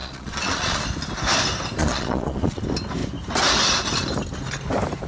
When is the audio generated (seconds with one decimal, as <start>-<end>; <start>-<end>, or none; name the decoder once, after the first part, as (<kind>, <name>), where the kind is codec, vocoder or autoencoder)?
0.0-0.8 (vocoder, Vocos); 1.8-2.6